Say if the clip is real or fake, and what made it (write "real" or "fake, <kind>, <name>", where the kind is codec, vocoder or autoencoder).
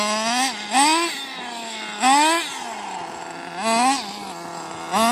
real